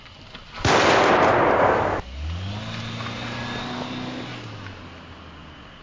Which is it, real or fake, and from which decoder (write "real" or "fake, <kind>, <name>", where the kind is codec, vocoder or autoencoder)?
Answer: real